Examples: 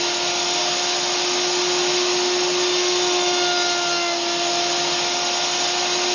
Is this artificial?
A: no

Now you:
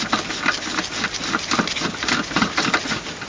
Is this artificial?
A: no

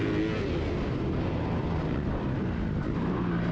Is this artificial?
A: no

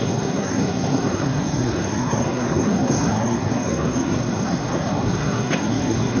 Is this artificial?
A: yes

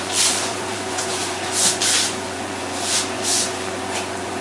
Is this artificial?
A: yes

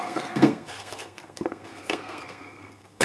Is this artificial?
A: yes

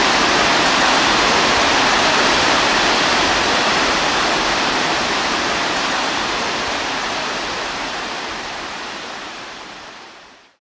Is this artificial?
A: yes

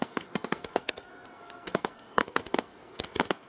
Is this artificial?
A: yes